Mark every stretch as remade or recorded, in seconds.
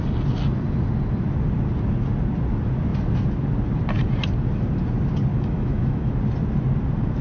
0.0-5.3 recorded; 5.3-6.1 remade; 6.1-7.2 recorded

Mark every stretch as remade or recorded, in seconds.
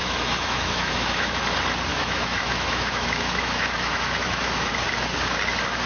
0.0-1.4 remade; 1.4-1.9 recorded; 1.9-4.7 remade; 4.7-5.9 recorded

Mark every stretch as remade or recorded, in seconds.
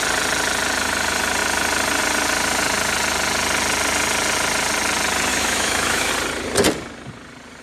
0.0-5.3 recorded; 5.3-6.1 remade; 6.1-7.6 recorded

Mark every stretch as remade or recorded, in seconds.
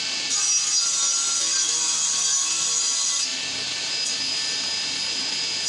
0.0-5.7 recorded